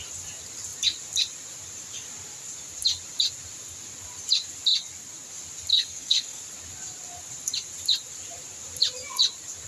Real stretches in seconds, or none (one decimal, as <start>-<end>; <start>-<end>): 0.0-5.7; 6.4-9.7